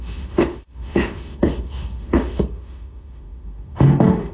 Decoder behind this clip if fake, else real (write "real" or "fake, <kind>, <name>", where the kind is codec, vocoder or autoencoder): fake, autoencoder, DAC-VAE